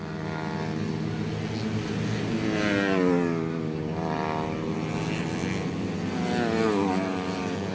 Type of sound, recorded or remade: recorded